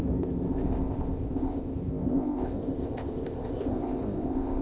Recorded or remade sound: remade